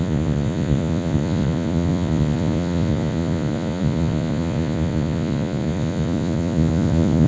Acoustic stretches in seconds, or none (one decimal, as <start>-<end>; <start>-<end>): none